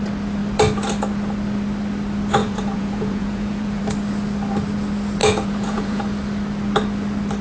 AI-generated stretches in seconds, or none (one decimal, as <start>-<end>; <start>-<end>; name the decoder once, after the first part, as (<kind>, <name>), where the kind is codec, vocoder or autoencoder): 2.4-3.8 (vocoder, Vocos); 5.2-6.0